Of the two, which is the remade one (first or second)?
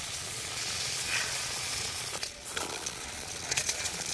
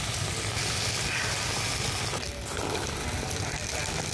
first